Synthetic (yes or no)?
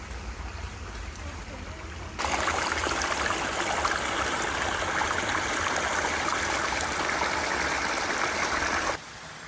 no